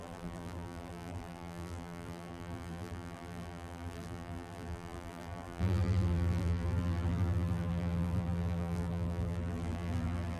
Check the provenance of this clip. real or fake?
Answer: fake